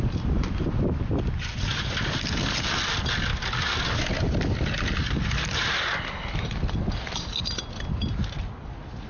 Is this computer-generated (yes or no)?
no